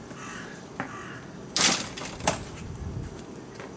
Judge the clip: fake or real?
real